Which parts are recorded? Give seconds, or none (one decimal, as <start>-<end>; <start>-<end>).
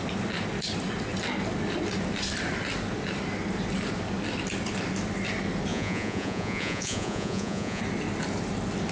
0.0-5.7; 7.8-8.9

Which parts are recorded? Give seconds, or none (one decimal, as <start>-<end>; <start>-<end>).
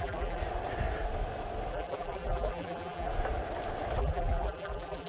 0.4-1.7; 3.1-4.0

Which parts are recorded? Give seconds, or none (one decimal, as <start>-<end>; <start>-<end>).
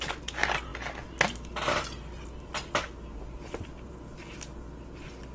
0.0-5.3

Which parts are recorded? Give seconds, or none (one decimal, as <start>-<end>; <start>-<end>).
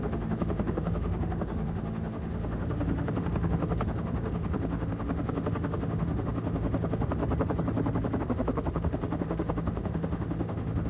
7.2-8.2